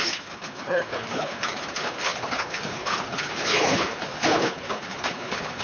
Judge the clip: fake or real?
fake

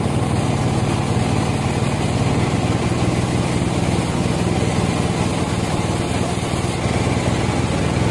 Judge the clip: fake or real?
real